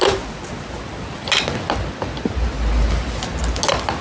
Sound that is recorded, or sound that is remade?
recorded